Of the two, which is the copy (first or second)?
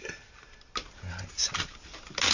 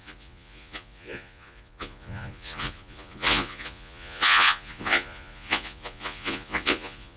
second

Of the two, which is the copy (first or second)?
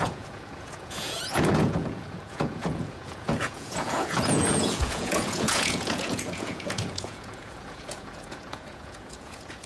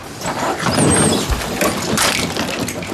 first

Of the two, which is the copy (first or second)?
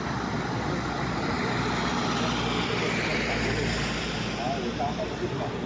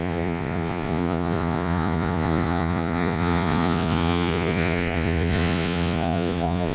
second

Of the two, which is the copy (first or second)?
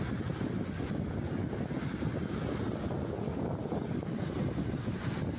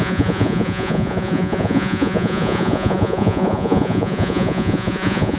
second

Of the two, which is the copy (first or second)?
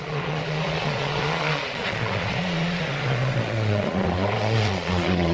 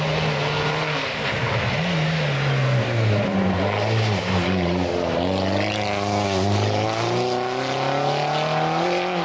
first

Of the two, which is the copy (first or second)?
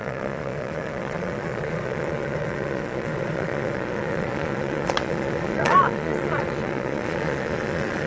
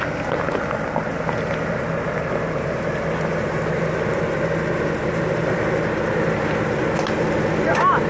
first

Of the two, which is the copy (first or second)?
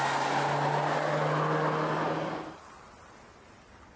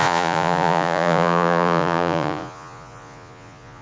second